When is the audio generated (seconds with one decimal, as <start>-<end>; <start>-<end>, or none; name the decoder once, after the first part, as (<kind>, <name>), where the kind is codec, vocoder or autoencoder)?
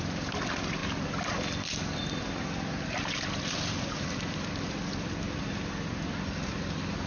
none